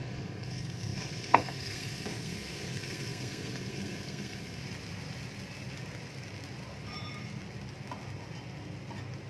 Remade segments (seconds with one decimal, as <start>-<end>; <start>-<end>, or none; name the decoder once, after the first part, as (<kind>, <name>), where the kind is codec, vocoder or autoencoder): 0.0-4.6 (codec, SNAC)